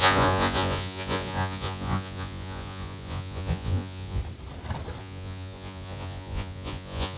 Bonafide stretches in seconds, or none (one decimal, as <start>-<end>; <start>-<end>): 4.2-5.0